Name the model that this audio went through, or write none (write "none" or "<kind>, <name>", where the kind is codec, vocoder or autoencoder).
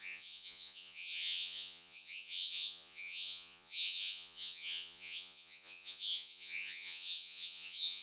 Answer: vocoder, Vocos